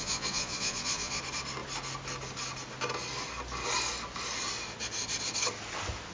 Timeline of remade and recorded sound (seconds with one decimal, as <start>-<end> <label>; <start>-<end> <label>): 0.0-1.2 remade; 1.2-6.1 recorded